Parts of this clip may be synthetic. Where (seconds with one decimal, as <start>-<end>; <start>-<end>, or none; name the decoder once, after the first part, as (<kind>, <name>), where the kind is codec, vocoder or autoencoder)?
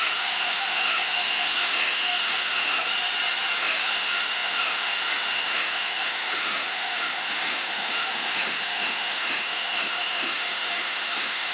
0.0-2.8 (autoencoder, DAC-VAE); 3.6-11.5